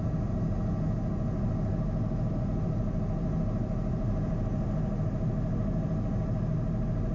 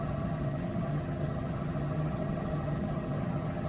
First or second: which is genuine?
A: first